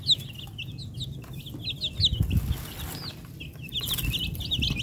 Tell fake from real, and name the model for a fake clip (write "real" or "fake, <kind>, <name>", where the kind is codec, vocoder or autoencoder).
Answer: real